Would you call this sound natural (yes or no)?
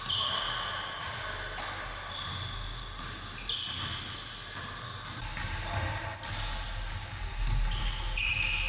yes